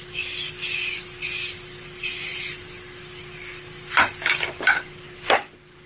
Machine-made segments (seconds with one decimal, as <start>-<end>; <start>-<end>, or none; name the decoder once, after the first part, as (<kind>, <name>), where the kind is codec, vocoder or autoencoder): none